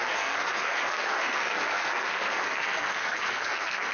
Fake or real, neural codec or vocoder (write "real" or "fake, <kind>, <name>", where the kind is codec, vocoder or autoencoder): fake, codec, SNAC